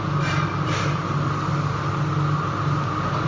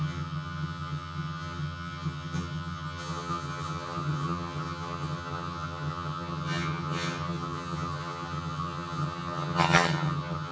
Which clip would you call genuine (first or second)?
first